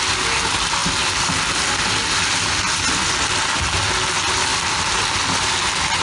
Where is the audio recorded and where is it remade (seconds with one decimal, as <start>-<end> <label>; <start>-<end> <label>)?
0.0-6.0 recorded